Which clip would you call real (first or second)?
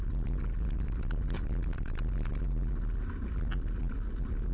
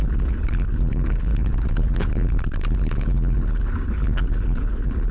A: first